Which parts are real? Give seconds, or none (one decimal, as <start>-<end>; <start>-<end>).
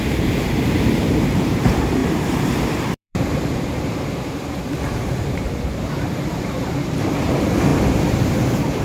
none